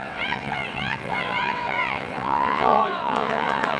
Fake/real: fake